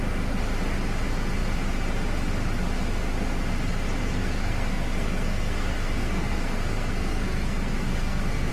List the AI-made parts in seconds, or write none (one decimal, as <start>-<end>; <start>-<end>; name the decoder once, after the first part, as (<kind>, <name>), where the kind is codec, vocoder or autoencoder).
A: 4.0-8.5 (codec, SNAC)